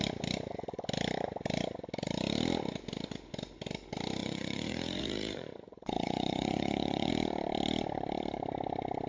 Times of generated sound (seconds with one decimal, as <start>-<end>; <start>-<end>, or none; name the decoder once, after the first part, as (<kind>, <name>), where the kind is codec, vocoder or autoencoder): 4.2-7.1 (vocoder, Vocos)